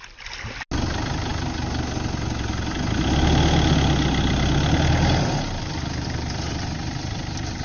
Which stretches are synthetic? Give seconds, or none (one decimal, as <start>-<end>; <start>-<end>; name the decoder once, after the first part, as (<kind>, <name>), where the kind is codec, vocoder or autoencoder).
none